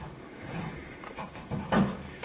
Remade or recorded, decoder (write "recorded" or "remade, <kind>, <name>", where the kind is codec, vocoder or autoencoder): remade, autoencoder, DAC-VAE